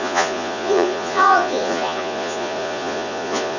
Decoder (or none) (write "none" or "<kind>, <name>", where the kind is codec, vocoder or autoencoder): vocoder, Vocos